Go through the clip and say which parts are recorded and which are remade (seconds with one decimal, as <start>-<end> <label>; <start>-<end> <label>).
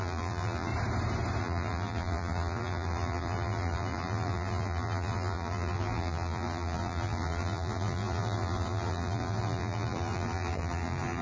0.0-0.7 remade; 0.7-1.4 recorded; 1.4-11.2 remade